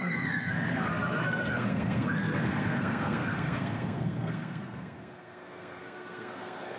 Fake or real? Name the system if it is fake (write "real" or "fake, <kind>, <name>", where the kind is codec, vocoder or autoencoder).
fake, codec, SNAC